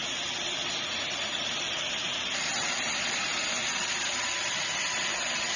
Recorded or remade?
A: remade